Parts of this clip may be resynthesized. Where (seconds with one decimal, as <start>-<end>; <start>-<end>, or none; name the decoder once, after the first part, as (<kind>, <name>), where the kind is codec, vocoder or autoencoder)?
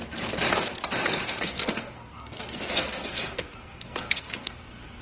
1.4-5.0 (codec, SNAC)